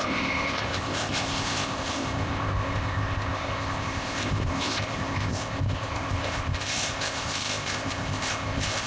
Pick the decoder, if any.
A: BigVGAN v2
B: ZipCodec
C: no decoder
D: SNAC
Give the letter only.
B